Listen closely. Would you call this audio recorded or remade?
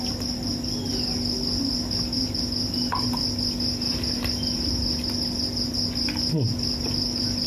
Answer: recorded